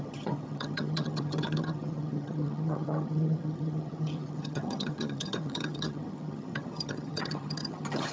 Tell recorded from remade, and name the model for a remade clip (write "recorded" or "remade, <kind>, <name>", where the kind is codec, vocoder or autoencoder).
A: remade, vocoder, HiFi-GAN